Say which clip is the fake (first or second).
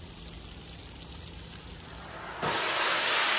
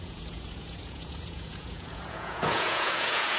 second